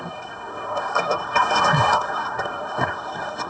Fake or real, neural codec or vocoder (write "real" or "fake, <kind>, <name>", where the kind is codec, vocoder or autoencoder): fake, codec, SNAC